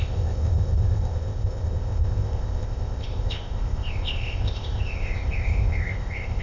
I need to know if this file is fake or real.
fake